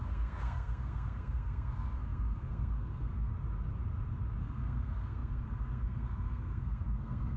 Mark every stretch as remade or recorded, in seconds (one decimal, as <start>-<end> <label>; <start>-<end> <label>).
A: 0.0-3.3 remade; 3.3-4.4 recorded; 4.4-7.4 remade